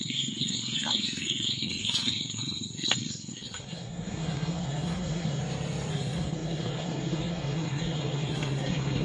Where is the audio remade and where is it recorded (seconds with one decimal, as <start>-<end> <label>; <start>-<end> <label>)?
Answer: 0.0-5.4 remade; 5.4-5.9 recorded; 5.9-9.0 remade